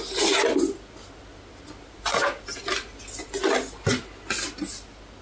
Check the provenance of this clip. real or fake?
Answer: real